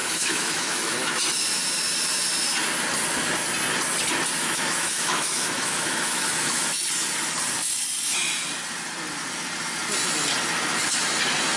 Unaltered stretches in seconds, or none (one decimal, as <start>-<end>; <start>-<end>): 1.2-4.4; 6.8-11.6